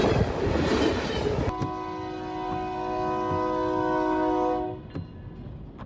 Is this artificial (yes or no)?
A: no